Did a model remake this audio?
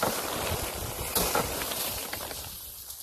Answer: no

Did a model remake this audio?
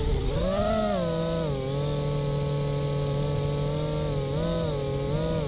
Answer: no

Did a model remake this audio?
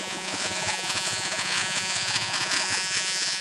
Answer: yes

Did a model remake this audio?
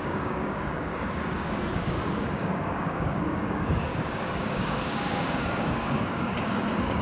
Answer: yes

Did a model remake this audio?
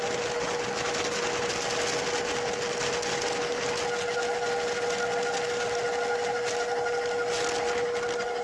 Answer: no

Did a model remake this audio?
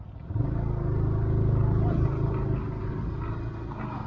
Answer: no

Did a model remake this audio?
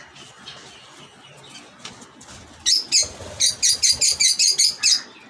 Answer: no